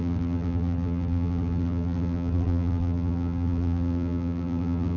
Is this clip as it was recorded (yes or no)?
no